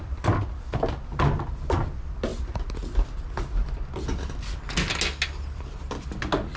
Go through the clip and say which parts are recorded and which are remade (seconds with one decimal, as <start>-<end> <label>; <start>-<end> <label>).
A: 0.0-6.6 recorded